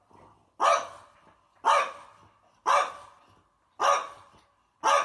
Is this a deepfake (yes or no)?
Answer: no